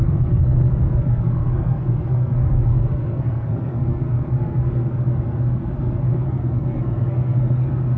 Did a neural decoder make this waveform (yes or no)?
yes